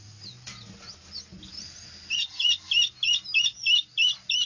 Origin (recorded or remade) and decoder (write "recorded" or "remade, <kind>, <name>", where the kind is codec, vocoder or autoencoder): recorded